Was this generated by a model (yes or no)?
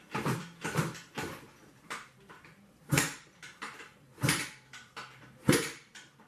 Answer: yes